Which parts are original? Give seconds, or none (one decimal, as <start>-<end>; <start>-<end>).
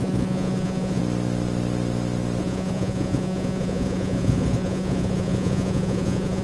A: 1.0-2.4